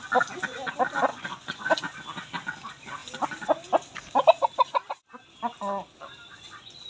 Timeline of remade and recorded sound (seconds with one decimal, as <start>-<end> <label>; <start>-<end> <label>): 0.0-1.1 recorded; 1.1-1.7 remade; 1.7-6.3 recorded; 6.3-6.9 remade